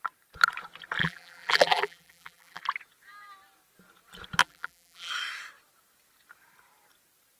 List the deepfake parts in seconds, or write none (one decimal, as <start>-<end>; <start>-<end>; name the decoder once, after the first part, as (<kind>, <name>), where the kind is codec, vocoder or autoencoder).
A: 1.0-2.6 (vocoder, BigVGAN v2); 4.4-5.1